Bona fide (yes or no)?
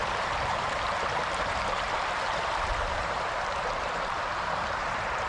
no